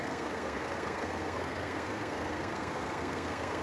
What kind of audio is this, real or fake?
fake